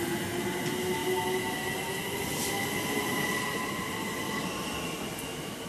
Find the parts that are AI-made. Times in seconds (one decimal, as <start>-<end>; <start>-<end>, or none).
none

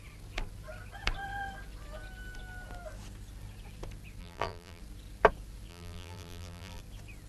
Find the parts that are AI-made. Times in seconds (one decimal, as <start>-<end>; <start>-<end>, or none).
4.2-4.8; 5.7-6.8